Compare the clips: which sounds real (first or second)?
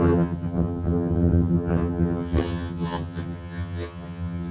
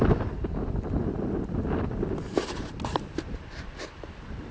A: second